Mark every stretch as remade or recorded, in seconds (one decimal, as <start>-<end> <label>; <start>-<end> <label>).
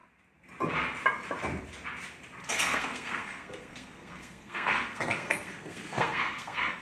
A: 0.0-2.4 recorded; 2.4-6.8 remade